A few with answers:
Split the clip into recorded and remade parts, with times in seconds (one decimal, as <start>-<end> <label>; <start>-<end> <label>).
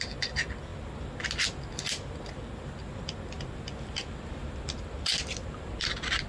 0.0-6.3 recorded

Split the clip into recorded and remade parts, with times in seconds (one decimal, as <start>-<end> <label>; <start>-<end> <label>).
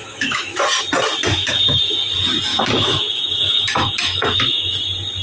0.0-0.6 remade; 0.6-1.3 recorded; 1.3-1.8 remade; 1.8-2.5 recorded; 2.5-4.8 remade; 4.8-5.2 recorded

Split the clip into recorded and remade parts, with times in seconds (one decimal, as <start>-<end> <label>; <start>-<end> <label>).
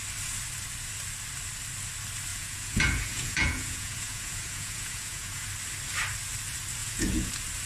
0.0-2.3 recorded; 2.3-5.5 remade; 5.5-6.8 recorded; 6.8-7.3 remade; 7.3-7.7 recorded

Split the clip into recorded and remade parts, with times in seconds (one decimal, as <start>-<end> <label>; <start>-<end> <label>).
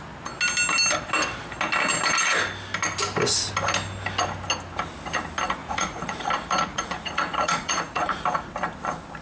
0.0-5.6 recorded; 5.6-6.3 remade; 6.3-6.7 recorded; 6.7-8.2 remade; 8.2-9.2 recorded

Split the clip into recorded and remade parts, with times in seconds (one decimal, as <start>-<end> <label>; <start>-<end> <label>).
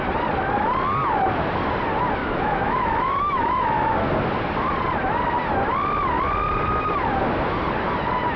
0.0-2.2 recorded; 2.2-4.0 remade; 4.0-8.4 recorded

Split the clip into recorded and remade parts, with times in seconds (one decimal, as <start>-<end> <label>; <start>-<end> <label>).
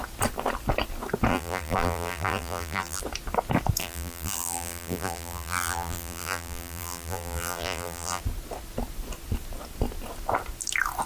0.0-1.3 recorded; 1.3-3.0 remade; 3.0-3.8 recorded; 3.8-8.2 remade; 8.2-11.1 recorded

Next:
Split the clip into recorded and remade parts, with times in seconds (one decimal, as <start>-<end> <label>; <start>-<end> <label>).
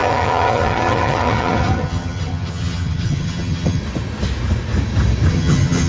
0.0-3.8 remade; 3.8-5.3 recorded; 5.3-5.9 remade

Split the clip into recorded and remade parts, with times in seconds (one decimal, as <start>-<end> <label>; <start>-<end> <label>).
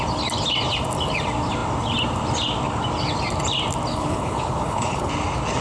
0.0-3.9 recorded; 3.9-5.1 remade; 5.1-5.6 recorded